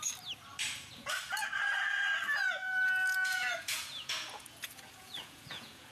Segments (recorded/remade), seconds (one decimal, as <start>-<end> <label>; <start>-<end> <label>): 0.0-2.3 recorded; 2.3-5.9 remade